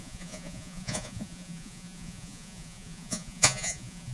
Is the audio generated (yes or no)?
yes